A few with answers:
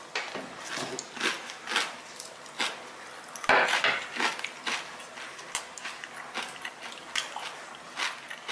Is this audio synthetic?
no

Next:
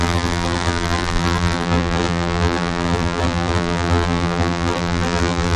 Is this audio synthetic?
yes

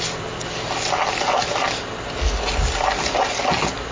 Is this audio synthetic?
no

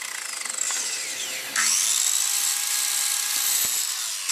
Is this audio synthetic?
no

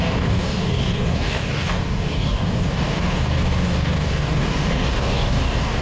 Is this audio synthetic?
yes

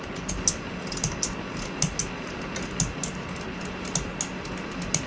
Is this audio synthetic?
no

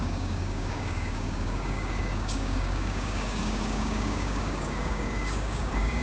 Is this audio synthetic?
yes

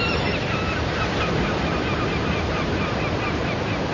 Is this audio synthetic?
no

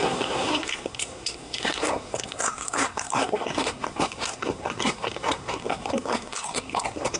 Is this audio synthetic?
yes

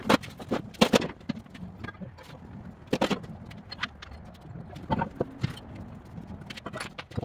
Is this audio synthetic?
no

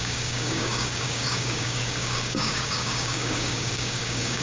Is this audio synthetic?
yes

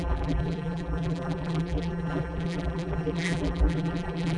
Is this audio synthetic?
yes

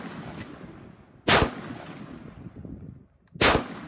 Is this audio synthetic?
no